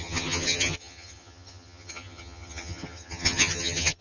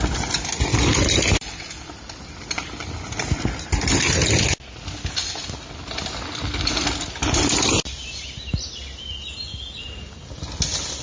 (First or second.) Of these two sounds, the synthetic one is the first